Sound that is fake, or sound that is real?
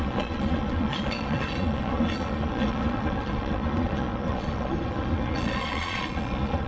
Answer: fake